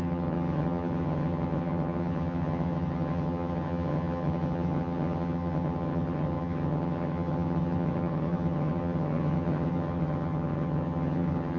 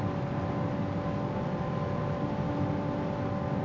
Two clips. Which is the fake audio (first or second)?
first